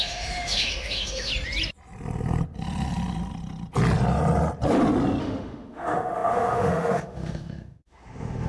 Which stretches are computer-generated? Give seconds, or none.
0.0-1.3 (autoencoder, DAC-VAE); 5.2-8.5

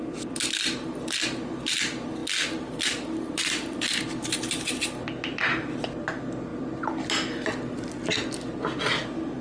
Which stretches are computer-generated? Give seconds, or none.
none

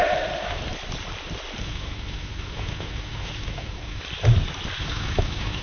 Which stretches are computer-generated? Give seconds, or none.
1.6-4.0 (autoencoder, DAC-VAE); 4.8-5.6